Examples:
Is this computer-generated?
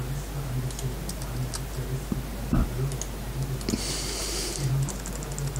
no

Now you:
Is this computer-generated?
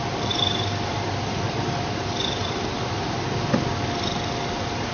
yes